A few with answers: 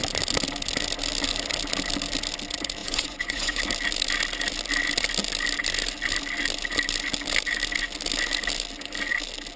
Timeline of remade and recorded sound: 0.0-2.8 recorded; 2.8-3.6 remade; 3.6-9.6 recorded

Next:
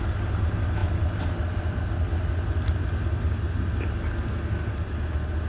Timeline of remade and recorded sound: 0.0-5.5 recorded

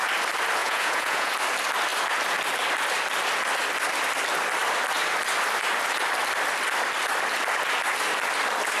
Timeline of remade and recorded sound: 0.0-0.6 recorded; 0.6-1.3 remade; 1.3-8.8 recorded

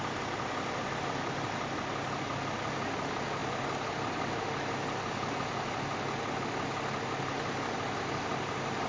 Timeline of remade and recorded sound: 0.0-8.9 recorded

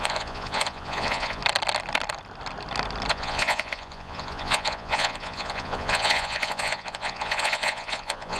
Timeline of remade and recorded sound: 0.0-1.4 remade; 1.4-3.1 recorded; 3.1-8.4 remade